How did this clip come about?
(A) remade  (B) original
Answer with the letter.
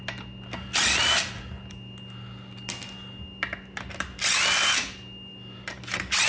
B